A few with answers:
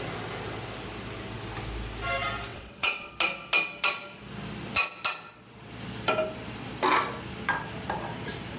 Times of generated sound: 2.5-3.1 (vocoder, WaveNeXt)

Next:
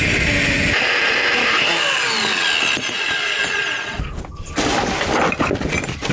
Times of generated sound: none

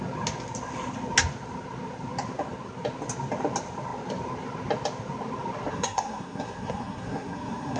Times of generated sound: 5.7-7.8 (codec, SNAC)